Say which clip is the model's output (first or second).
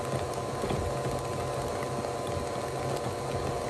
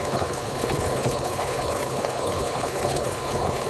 second